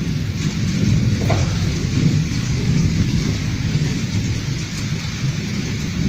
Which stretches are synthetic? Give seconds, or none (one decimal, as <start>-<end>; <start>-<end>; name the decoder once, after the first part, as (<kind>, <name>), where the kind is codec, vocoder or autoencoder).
1.4-4.0 (codec, DAC)